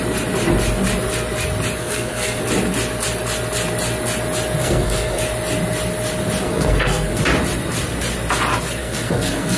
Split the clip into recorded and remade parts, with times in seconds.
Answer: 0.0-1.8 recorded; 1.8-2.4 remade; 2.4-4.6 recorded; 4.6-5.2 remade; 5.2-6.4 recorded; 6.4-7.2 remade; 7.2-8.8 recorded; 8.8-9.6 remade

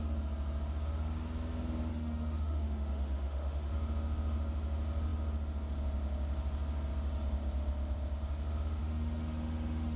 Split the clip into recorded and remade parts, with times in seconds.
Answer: 0.0-1.9 recorded; 1.9-3.7 remade; 3.7-8.8 recorded; 8.8-10.0 remade

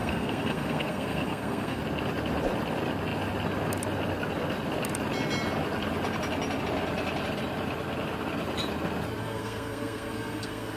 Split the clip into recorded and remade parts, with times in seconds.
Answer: 0.0-1.8 remade; 1.8-9.2 recorded; 9.2-10.8 remade

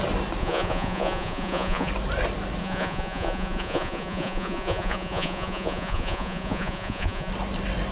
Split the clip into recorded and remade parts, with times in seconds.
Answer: 0.0-0.4 recorded; 0.4-1.9 remade; 1.9-2.6 recorded; 2.6-7.3 remade; 7.3-7.9 recorded

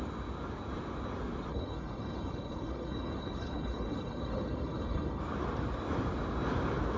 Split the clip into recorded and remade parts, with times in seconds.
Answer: 0.0-1.5 recorded; 1.5-5.2 remade; 5.2-7.0 recorded